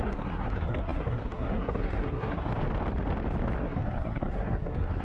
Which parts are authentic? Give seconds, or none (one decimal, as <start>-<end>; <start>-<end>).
2.5-3.6

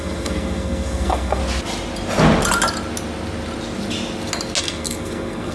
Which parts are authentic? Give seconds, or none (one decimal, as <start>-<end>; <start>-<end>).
1.4-4.6

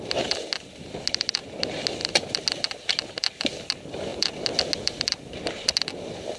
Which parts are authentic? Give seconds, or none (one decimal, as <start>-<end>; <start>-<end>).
0.0-6.4

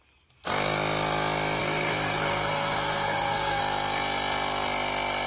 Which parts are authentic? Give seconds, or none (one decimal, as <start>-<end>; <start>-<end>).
0.0-1.6; 3.6-5.3

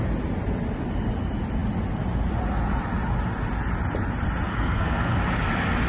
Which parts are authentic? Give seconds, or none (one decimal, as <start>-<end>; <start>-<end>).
0.0-4.5; 5.2-5.9

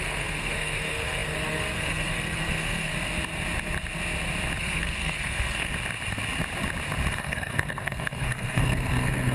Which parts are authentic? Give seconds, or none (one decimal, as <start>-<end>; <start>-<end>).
2.9-4.6; 5.7-7.1

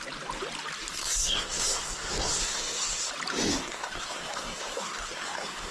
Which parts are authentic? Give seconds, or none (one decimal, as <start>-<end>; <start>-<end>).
0.0-0.9; 3.1-3.5